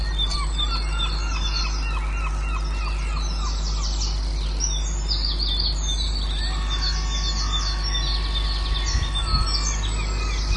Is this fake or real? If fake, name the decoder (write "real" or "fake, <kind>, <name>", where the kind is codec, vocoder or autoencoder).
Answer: real